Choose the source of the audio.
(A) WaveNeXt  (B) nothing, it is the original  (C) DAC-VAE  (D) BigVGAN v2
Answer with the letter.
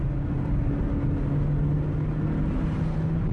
B